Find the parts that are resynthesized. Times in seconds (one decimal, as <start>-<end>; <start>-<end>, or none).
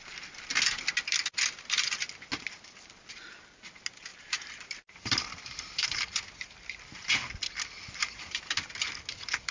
4.1-6.5; 8.0-8.7